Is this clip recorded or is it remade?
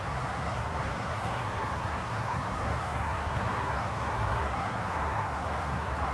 remade